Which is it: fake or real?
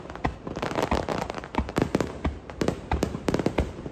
fake